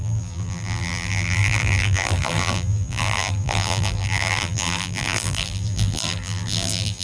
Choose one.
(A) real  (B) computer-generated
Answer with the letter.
B